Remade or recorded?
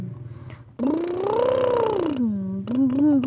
recorded